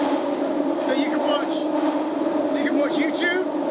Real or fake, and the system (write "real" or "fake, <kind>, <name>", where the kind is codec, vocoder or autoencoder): real